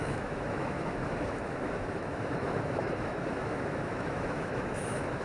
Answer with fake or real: fake